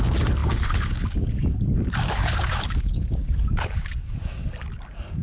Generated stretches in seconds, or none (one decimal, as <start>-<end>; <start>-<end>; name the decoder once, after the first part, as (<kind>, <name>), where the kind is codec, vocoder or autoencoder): 0.0-5.2 (codec, DAC)